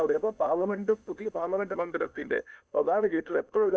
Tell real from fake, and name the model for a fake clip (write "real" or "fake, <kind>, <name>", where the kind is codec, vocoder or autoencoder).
fake, codec, ZipCodec